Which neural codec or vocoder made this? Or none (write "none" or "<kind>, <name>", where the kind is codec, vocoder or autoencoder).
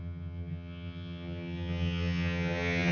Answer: vocoder, HiFi-GAN